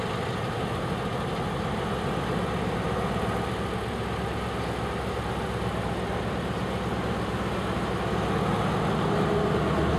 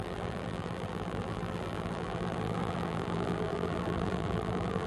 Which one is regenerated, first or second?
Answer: second